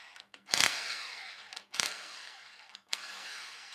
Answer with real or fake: fake